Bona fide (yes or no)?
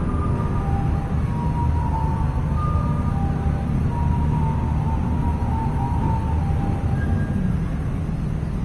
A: yes